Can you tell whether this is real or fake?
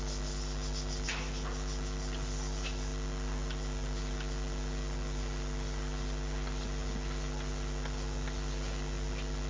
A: real